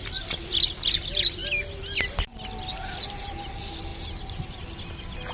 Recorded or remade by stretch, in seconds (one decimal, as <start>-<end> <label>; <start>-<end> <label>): 0.0-5.3 recorded

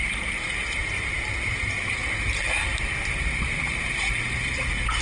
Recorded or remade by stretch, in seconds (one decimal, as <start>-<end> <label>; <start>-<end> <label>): 0.0-0.8 remade; 0.8-1.5 recorded; 1.5-2.0 remade; 2.0-3.0 recorded; 3.0-5.0 remade

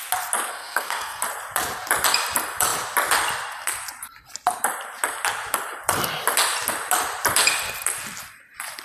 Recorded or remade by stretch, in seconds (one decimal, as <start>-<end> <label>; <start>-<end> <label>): 0.0-0.5 recorded; 0.5-1.2 remade; 1.2-8.8 recorded